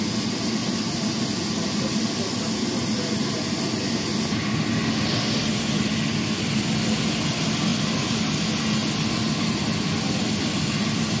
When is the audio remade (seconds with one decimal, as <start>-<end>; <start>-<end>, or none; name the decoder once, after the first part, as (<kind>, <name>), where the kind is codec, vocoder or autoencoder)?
none